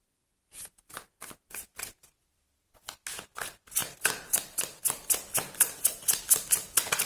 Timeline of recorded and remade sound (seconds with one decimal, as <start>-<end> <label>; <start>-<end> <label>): 0.0-0.4 recorded; 0.4-1.7 remade; 1.7-3.8 recorded; 3.8-6.2 remade; 6.2-7.1 recorded